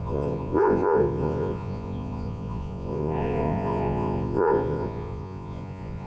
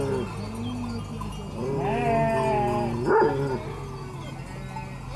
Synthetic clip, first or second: first